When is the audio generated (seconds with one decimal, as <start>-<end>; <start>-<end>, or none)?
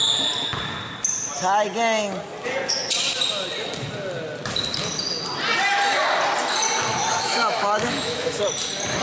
6.9-8.4